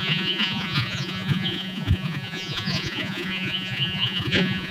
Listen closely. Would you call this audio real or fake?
fake